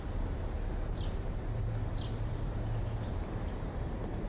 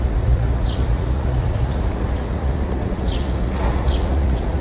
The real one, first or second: first